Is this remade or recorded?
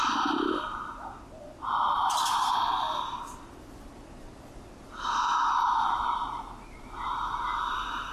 remade